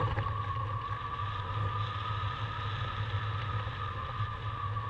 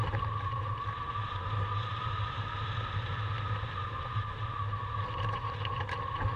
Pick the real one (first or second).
first